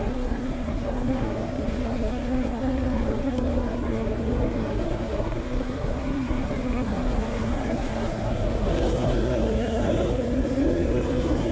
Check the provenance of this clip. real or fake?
fake